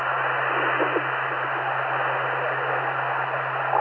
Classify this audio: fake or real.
real